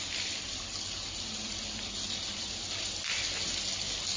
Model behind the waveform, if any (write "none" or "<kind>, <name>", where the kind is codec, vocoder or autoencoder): none